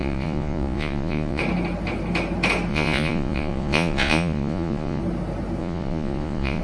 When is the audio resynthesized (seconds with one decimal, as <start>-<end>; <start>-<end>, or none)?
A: 0.0-1.4; 2.7-5.0; 5.6-6.6